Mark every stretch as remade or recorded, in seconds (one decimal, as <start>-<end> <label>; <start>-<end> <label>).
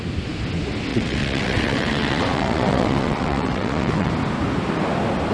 0.0-0.9 recorded; 0.9-4.1 remade; 4.1-5.3 recorded